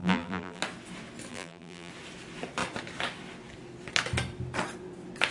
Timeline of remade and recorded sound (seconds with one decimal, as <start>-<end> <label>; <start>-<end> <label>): 0.0-0.6 remade; 0.6-1.3 recorded; 1.3-1.9 remade; 1.9-5.3 recorded